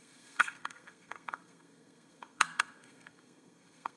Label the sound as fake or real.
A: fake